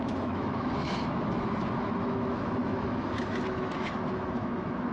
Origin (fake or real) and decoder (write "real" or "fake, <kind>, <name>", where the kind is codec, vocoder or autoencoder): fake, autoencoder, DAC-VAE